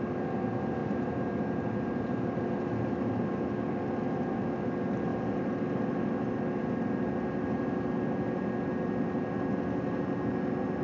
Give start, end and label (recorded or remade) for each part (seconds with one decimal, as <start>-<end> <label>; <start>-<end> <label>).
0.0-10.8 recorded